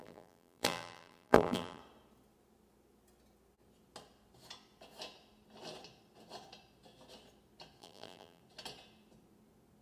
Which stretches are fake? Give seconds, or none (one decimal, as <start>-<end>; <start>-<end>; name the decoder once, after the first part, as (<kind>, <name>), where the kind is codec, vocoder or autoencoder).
0.0-1.8 (vocoder, BigVGAN v2); 7.8-8.4